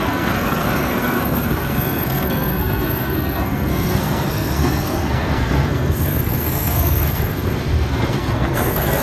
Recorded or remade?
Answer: remade